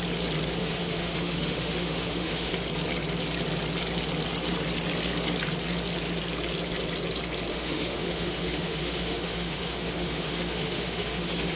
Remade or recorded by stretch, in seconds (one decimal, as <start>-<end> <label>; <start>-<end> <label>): 0.0-0.6 recorded; 0.6-2.5 remade; 2.5-7.5 recorded; 7.5-11.6 remade